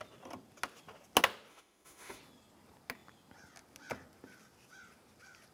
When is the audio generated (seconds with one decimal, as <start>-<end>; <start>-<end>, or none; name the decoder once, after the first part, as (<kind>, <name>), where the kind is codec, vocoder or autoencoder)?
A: 1.5-2.2 (autoencoder, DAC-VAE)